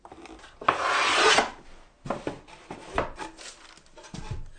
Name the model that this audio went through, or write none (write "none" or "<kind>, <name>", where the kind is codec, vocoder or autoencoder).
none